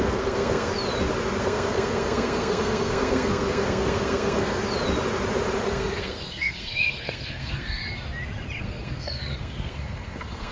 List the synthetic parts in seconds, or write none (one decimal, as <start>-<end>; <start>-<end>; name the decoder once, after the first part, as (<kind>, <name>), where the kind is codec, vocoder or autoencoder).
0.0-0.7 (codec, SNAC); 1.4-4.6; 5.7-7.8; 8.6-10.5